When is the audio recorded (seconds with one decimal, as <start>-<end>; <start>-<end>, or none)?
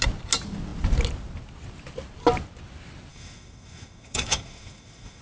0.0-3.1